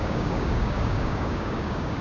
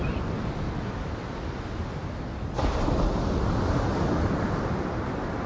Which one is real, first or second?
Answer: second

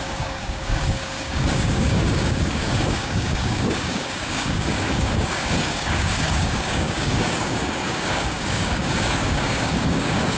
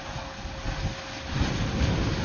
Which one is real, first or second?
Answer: second